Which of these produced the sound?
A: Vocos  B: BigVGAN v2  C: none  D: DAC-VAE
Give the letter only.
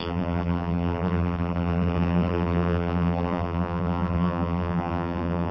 B